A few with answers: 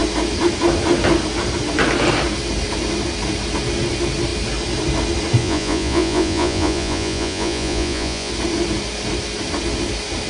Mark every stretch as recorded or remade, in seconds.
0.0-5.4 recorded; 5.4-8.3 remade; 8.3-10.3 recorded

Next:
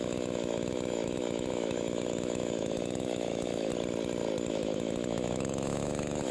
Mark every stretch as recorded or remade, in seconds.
0.0-3.7 remade; 3.7-4.5 recorded; 4.5-6.3 remade

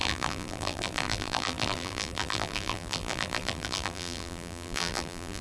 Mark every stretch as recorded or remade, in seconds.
0.0-5.4 remade

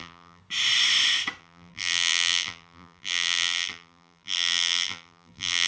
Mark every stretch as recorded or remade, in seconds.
0.0-0.4 remade; 0.4-1.4 recorded; 1.4-5.7 remade

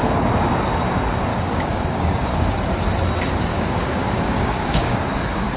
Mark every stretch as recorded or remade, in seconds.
0.0-1.3 recorded; 1.3-2.5 remade; 2.5-3.5 recorded; 3.5-5.6 remade

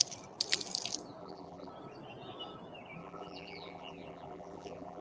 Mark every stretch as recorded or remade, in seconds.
0.0-1.2 recorded; 1.2-1.7 remade; 1.7-3.0 recorded; 3.0-5.0 remade